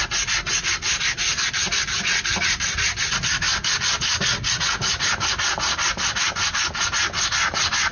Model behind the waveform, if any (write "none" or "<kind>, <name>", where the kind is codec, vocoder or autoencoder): none